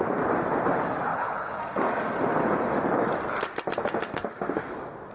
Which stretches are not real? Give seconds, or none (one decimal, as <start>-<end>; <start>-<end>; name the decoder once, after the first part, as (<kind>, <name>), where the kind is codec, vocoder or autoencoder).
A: 1.1-1.6 (codec, HILCodec)